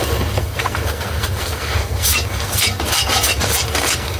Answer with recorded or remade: remade